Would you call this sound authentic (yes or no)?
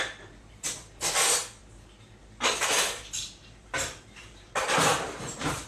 no